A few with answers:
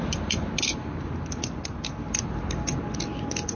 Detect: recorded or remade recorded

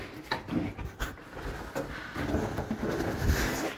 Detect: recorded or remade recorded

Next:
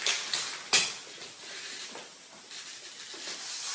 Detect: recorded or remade recorded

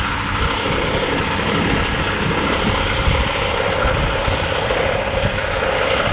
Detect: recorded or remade recorded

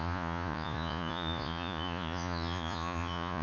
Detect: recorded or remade remade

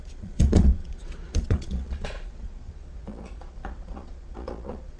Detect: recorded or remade remade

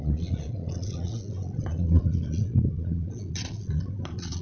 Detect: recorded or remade remade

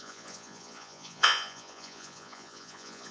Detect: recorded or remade remade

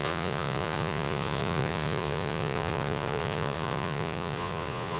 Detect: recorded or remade remade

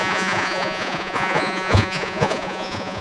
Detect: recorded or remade remade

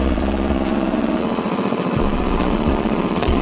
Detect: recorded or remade remade